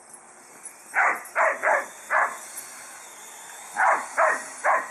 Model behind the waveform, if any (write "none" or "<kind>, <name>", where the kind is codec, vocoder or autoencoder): none